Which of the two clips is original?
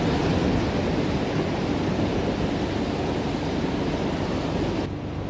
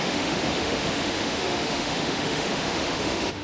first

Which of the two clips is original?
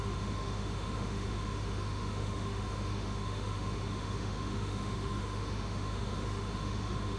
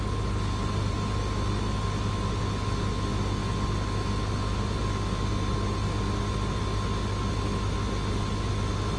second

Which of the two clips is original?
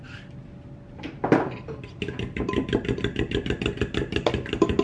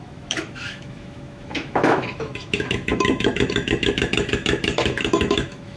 first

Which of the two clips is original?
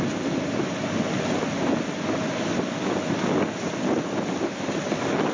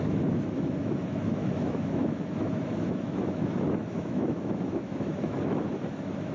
first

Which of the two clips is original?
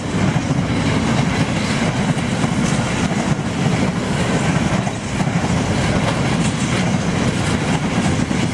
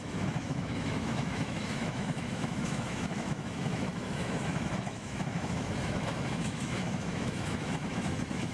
first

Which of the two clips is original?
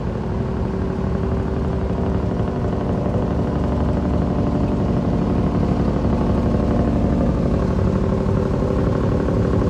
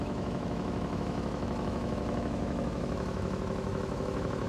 first